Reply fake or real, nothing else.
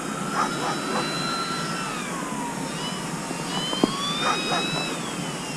real